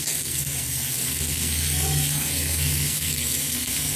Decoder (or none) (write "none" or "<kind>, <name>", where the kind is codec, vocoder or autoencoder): codec, SNAC